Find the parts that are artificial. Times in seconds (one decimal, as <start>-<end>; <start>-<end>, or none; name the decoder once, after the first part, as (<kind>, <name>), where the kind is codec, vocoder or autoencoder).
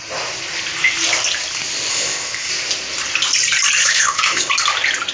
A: 1.9-2.5 (codec, ZipCodec); 3.8-4.5